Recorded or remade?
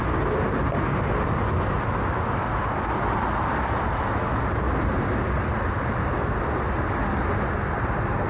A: recorded